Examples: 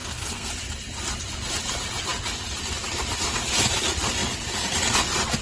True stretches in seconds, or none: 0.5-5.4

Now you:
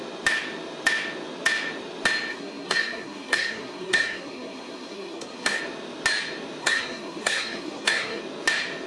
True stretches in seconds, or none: 0.0-2.3; 5.6-6.6; 8.2-8.9